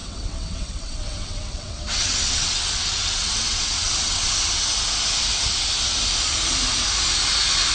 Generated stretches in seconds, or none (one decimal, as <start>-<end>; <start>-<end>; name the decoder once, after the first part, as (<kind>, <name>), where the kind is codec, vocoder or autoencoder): 0.0-4.3 (vocoder, WaveNeXt)